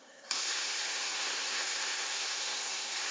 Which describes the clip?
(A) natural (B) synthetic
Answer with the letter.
B